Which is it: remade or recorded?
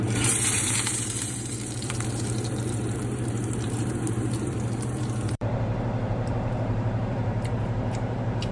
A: remade